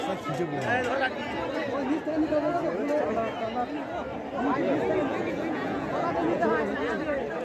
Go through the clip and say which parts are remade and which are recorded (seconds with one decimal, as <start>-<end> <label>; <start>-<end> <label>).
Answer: 0.0-5.1 recorded; 5.1-6.5 remade; 6.5-7.4 recorded

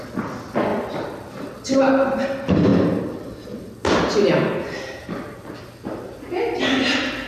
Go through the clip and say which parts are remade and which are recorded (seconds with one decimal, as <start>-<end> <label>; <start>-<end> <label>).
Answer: 0.0-7.3 recorded

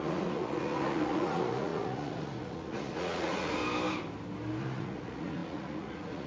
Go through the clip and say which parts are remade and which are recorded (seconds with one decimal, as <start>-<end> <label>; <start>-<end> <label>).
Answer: 0.0-3.6 remade; 3.6-4.6 recorded; 4.6-6.3 remade

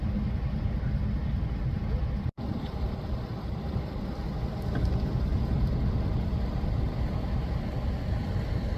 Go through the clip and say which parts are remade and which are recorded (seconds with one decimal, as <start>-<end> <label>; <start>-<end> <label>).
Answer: 0.0-4.2 remade; 4.2-4.8 recorded; 4.8-8.8 remade

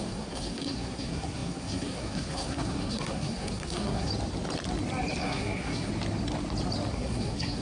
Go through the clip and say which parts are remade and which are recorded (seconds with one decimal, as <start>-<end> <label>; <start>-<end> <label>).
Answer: 0.0-4.1 remade; 4.1-5.2 recorded; 5.2-5.9 remade; 5.9-6.9 recorded; 6.9-7.6 remade

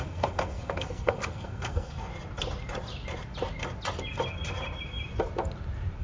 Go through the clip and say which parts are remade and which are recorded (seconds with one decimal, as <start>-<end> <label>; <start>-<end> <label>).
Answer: 0.0-2.1 remade; 2.1-6.0 recorded

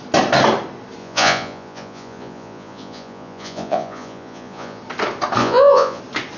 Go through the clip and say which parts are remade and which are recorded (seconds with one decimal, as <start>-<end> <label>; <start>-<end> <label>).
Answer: 0.0-1.0 recorded; 1.0-4.8 remade; 4.8-5.4 recorded; 5.4-6.0 remade; 6.0-6.4 recorded

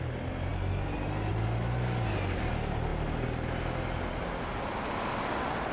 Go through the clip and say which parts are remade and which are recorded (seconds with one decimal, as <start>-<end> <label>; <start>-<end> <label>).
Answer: 0.0-5.7 recorded